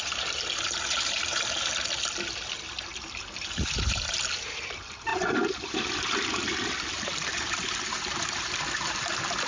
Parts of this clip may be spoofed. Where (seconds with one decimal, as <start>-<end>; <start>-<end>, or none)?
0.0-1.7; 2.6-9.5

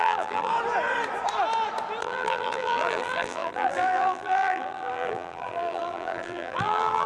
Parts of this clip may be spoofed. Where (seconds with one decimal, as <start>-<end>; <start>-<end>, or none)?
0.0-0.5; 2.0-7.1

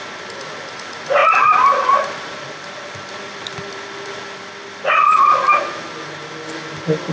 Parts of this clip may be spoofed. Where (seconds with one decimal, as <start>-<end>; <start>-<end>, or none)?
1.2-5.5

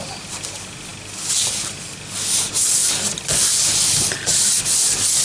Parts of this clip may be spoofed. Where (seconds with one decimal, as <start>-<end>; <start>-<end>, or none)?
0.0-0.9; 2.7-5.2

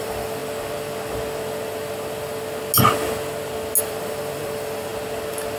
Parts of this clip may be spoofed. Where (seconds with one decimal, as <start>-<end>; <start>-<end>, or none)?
0.0-0.4; 3.8-4.9

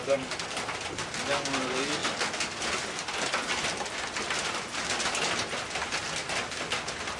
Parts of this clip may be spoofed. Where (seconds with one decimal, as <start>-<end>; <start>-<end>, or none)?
none

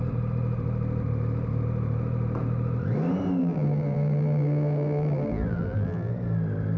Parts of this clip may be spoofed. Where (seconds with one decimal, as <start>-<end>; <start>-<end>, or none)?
3.4-6.1

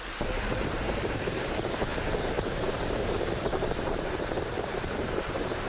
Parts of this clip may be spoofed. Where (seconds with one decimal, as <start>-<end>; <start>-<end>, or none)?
0.0-5.7